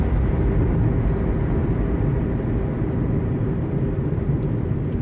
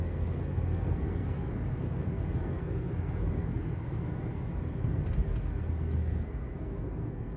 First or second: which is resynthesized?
second